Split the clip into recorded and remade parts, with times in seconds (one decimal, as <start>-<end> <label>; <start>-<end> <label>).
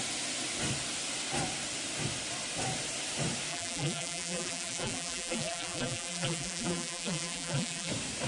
0.0-3.5 recorded; 3.5-7.9 remade; 7.9-8.3 recorded